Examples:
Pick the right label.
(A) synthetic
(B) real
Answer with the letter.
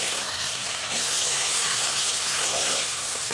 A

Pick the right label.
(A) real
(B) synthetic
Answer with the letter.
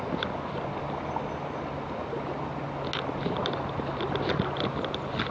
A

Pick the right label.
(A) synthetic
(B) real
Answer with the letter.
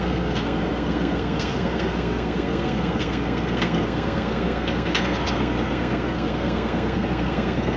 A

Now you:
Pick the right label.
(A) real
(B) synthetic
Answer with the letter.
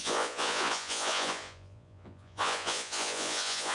B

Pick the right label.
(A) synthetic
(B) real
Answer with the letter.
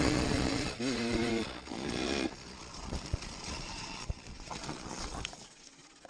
A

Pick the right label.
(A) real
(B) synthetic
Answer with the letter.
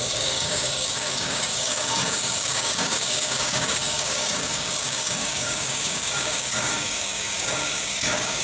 B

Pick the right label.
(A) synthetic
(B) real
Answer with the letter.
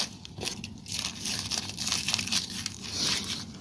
B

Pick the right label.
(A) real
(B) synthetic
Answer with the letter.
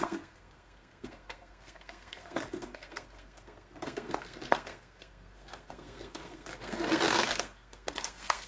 B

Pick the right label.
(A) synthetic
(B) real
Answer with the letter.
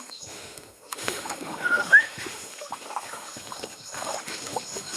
A